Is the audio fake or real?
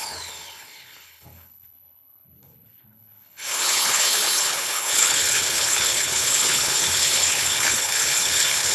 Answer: fake